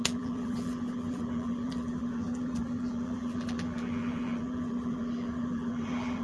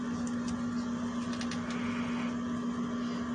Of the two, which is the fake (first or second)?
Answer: first